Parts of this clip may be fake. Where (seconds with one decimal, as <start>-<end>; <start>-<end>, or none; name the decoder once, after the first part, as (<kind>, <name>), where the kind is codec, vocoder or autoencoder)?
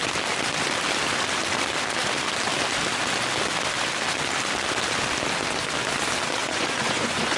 6.4-7.4 (vocoder, Vocos)